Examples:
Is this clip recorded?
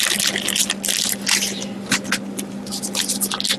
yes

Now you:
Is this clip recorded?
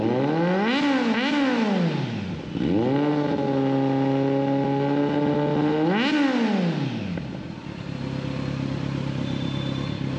yes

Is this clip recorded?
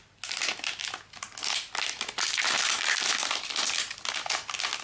yes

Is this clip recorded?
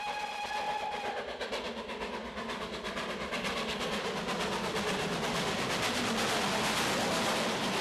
yes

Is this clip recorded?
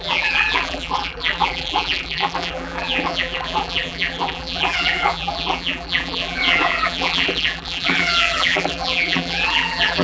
no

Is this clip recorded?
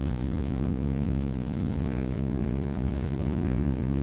no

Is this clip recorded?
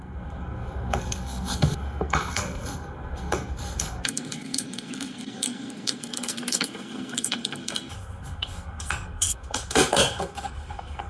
no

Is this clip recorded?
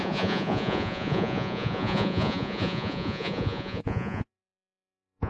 no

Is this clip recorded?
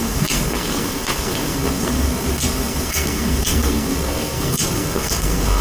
no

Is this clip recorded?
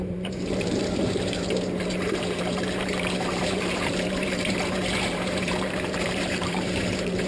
no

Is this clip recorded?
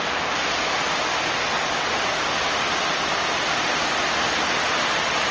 yes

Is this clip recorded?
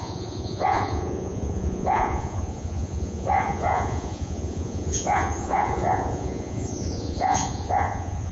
no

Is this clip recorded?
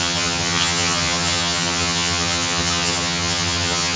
no